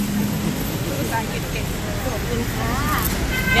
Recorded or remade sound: recorded